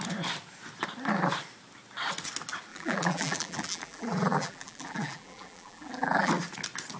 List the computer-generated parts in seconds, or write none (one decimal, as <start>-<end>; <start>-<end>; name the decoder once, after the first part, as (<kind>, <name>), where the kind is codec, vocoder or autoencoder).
2.7-6.3 (vocoder, BigVGAN v2)